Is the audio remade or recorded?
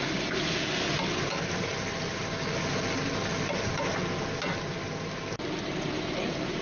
recorded